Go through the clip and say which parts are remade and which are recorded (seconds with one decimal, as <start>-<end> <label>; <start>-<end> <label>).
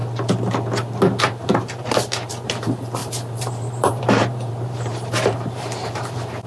0.0-1.2 recorded; 1.2-6.5 remade